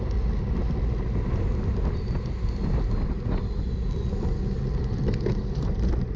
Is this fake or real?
real